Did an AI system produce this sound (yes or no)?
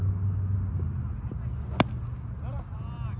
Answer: no